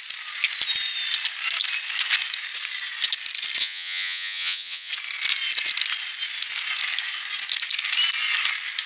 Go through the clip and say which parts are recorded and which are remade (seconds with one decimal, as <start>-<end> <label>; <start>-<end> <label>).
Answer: 0.0-3.6 recorded; 3.6-4.9 remade; 4.9-8.9 recorded